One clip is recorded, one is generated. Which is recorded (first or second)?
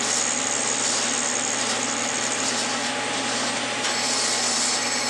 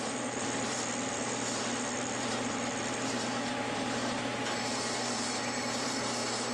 first